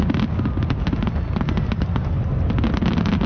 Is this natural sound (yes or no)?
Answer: yes